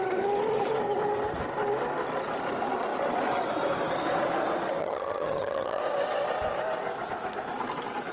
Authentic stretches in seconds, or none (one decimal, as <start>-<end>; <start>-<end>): 0.0-4.8; 5.8-8.1

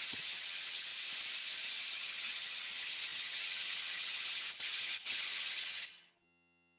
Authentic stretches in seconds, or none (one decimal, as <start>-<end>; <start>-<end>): 0.9-1.9